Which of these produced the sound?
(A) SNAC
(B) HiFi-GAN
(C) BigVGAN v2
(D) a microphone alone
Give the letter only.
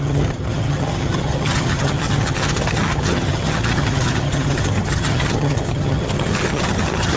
B